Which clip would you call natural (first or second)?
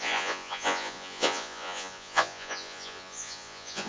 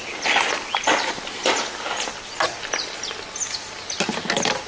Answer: second